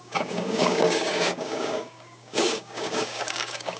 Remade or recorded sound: remade